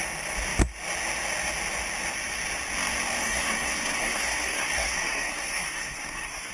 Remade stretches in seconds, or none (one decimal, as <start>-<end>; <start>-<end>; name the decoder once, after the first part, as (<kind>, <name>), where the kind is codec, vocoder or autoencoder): 3.2-6.5 (codec, SNAC)